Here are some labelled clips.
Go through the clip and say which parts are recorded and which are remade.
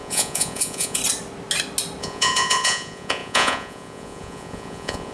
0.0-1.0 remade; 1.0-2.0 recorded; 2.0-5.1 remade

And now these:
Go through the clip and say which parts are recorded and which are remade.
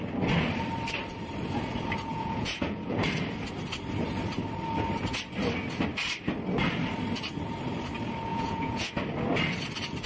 0.0-2.1 recorded; 2.1-3.0 remade; 3.0-8.3 recorded; 8.3-8.9 remade; 8.9-10.1 recorded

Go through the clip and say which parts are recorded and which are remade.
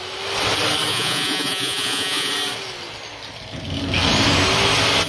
0.0-0.9 recorded; 0.9-2.3 remade; 2.3-5.1 recorded